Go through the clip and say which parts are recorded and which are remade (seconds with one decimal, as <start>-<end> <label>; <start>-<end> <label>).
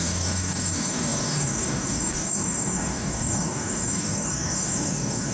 0.0-5.3 remade